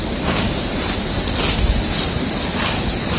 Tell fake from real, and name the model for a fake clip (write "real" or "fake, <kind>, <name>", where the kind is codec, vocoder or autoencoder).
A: real